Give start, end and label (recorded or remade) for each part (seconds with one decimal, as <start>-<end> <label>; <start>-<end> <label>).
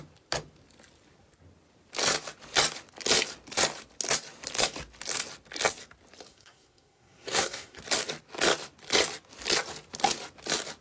0.0-6.3 recorded; 6.3-7.8 remade; 7.8-10.8 recorded